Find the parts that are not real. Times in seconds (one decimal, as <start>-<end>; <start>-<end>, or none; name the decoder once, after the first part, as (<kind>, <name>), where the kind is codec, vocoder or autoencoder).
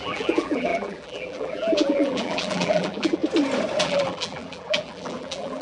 0.0-3.2 (vocoder, BigVGAN v2); 3.8-5.6